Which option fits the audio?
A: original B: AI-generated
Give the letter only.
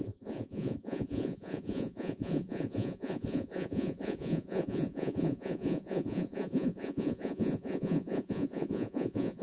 B